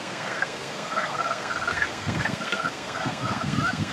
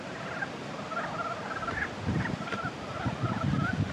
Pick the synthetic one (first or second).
first